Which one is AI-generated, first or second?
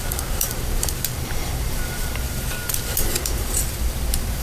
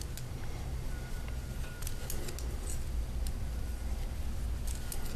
first